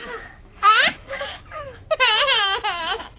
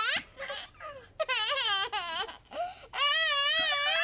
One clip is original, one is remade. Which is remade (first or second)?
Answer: first